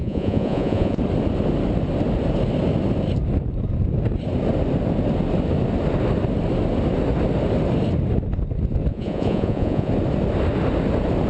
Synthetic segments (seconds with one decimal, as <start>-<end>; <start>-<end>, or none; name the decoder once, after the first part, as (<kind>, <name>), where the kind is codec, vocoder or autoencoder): 0.0-1.0 (vocoder, Vocos); 8.9-9.9